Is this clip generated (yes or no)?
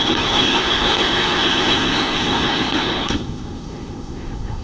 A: yes